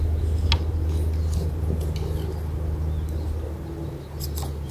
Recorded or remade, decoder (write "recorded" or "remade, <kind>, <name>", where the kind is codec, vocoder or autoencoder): recorded